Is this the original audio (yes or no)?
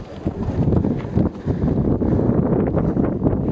yes